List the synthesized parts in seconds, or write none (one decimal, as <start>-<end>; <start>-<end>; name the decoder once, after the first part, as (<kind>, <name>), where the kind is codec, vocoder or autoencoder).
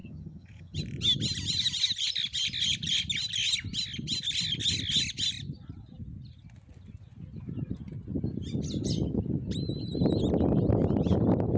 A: 0.0-0.8 (vocoder, HiFi-GAN)